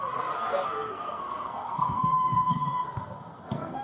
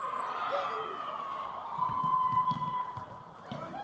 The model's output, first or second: first